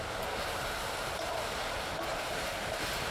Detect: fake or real fake